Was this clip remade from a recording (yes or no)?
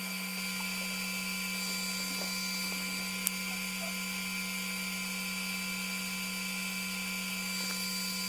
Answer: no